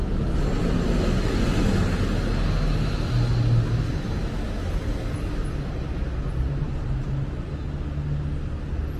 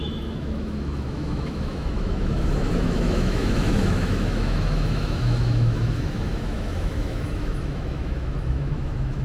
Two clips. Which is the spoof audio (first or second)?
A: second